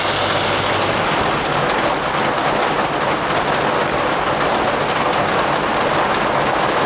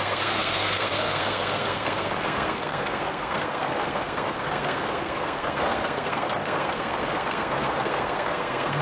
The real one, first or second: first